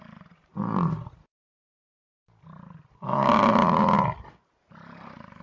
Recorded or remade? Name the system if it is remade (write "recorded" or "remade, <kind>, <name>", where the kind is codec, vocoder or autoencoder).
recorded